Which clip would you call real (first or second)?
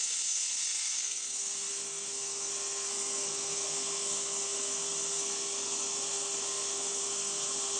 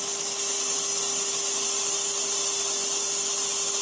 second